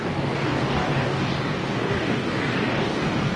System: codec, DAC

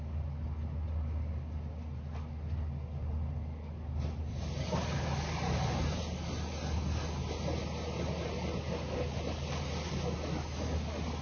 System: none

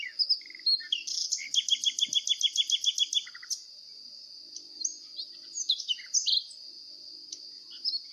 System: none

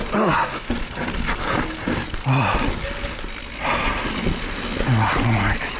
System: none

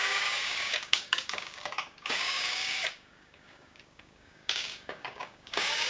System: codec, DAC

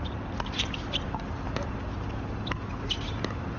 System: none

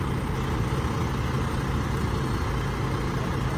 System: none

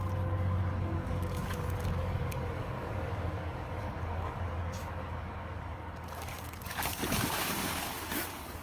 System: codec, DAC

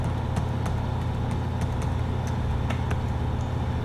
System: none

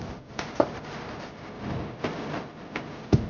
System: none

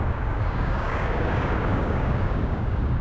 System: codec, DAC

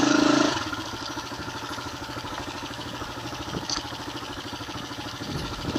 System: codec, DAC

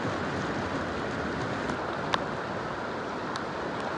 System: none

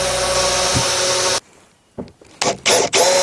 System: none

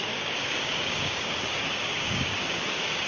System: codec, DAC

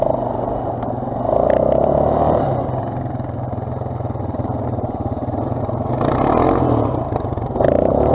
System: none